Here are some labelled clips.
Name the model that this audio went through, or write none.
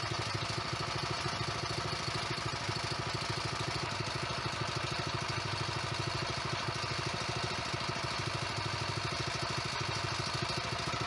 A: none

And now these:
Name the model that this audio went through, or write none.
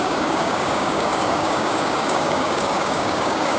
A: codec, DAC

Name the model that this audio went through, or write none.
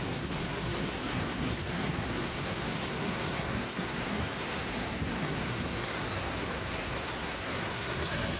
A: codec, SNAC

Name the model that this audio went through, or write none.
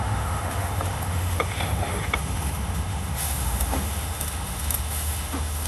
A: autoencoder, DAC-VAE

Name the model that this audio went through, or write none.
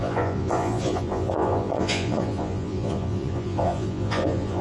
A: vocoder, Vocos